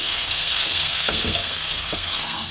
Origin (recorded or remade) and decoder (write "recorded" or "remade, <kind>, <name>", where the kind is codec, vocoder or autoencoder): remade, codec, SNAC